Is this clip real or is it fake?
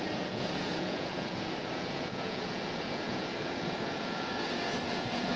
fake